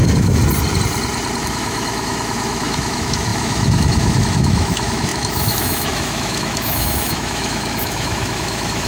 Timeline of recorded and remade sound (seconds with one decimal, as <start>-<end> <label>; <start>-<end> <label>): 0.0-0.4 remade; 0.4-1.4 recorded; 1.4-8.9 remade